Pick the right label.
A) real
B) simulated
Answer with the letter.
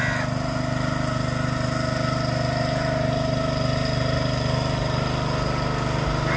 A